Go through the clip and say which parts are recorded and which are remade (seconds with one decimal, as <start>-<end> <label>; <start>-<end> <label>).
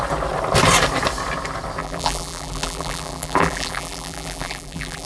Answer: 0.0-1.8 recorded; 1.8-5.1 remade